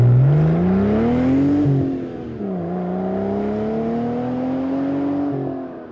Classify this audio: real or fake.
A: real